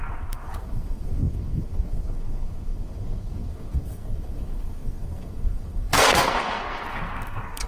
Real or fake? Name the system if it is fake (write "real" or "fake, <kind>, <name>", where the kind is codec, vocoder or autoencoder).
fake, codec, SNAC